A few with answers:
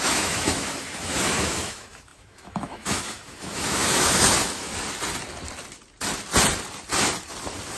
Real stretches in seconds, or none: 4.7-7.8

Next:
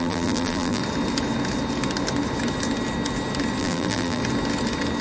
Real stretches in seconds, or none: 0.8-3.6; 4.2-5.0